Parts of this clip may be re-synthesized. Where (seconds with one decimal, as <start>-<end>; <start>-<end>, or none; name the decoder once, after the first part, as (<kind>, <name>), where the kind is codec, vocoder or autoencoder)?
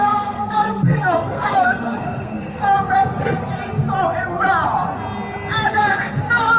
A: 0.0-2.6 (codec, SNAC); 5.7-6.6